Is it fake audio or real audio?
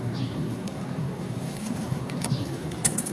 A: fake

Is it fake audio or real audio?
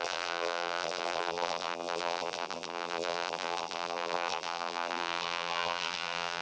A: fake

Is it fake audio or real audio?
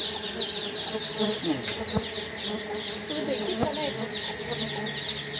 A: real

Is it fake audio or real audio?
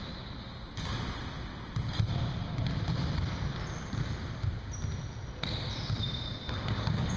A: real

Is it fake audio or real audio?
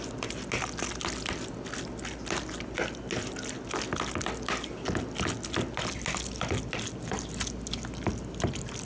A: real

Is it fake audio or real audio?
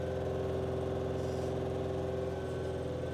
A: real